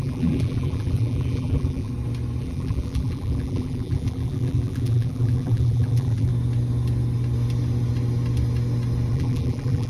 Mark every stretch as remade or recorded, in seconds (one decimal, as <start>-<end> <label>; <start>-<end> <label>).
0.0-1.9 remade; 1.9-2.4 recorded; 2.4-6.3 remade; 6.3-9.1 recorded; 9.1-9.9 remade